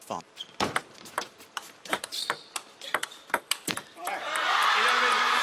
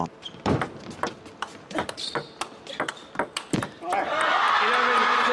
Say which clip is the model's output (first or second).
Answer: first